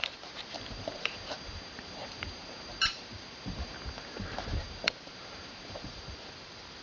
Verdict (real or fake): fake